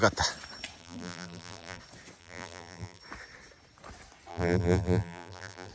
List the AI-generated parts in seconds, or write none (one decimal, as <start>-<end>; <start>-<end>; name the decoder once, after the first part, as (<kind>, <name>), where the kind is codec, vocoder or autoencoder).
0.8-1.8 (vocoder, BigVGAN v2); 2.2-3.0; 4.3-5.7